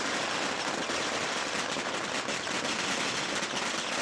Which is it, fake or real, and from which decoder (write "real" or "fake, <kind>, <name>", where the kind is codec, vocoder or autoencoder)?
real